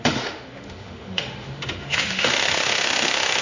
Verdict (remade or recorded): remade